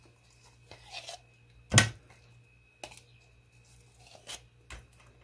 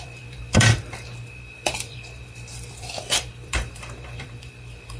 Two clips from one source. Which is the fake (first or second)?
second